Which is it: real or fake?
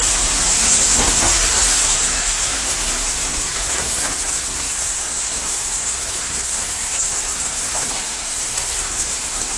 fake